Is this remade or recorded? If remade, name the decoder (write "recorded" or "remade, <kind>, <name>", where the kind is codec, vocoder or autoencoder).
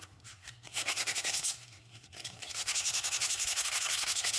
remade, codec, SNAC